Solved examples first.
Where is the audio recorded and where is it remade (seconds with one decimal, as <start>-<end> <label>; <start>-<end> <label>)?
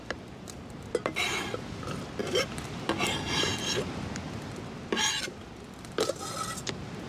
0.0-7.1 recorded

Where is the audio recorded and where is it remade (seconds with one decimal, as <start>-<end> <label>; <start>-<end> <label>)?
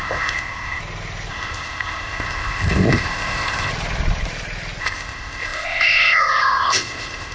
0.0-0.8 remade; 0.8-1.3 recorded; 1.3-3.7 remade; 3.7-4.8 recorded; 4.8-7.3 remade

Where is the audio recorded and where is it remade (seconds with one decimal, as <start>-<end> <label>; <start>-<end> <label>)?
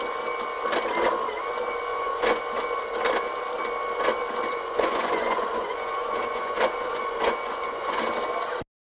0.0-1.9 recorded; 1.9-2.4 remade; 2.4-4.5 recorded; 4.5-8.0 remade; 8.0-8.9 recorded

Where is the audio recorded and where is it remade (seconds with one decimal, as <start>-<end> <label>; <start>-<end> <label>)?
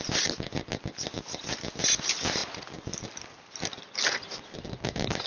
0.0-5.3 recorded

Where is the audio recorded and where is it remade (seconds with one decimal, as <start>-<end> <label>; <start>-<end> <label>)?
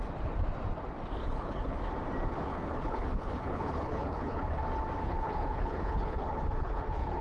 0.0-1.2 recorded; 1.2-1.8 remade; 1.8-2.5 recorded; 2.5-4.6 remade; 4.6-5.0 recorded; 5.0-7.2 remade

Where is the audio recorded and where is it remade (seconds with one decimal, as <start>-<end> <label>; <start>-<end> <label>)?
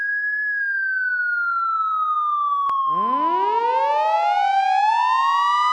0.0-5.7 recorded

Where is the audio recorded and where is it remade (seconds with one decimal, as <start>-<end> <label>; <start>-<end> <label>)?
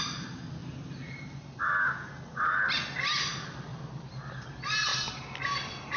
0.0-6.0 recorded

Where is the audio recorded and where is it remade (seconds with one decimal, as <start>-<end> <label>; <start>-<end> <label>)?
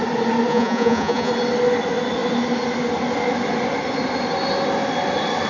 0.0-0.5 recorded; 0.5-1.3 remade; 1.3-5.5 recorded